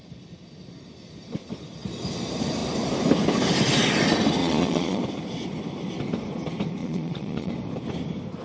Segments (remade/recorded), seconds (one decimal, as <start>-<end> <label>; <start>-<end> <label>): 0.0-4.4 recorded; 4.4-5.0 remade; 5.0-6.8 recorded; 6.8-7.5 remade; 7.5-8.4 recorded

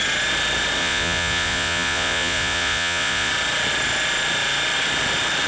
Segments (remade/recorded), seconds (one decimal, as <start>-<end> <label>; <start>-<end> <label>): 0.0-0.8 recorded; 0.8-3.3 remade; 3.3-5.5 recorded

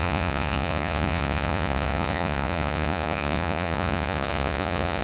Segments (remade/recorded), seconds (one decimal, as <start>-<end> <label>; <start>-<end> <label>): 0.0-5.0 remade

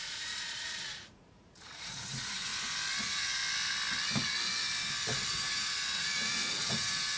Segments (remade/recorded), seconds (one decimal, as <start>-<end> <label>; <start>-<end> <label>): 0.0-2.5 remade; 2.5-3.0 recorded; 3.0-3.4 remade; 3.4-5.3 recorded; 5.3-7.2 remade

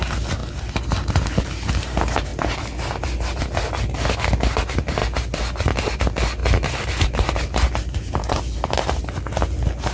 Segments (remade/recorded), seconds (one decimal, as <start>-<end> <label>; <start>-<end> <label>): 0.0-9.9 recorded

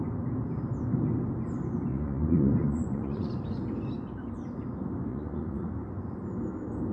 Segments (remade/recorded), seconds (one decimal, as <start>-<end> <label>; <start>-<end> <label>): 0.0-1.9 recorded; 1.9-3.3 remade; 3.3-5.1 recorded; 5.1-5.7 remade; 5.7-6.9 recorded

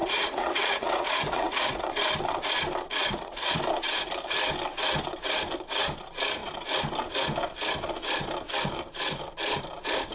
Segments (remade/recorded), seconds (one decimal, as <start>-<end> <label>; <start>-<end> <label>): 0.0-1.9 remade; 1.9-3.0 recorded; 3.0-3.6 remade; 3.6-10.1 recorded